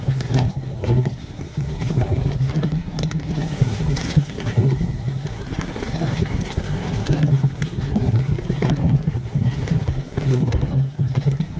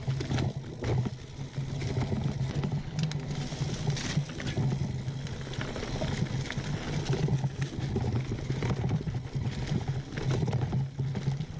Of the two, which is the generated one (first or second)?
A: first